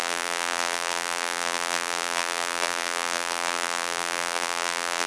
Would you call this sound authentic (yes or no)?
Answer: no